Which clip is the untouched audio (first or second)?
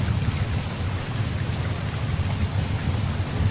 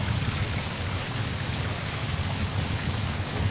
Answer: first